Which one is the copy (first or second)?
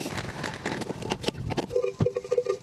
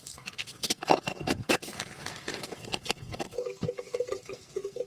second